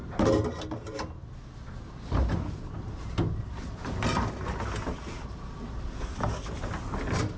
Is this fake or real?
real